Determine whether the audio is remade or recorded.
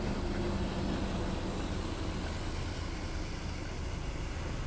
recorded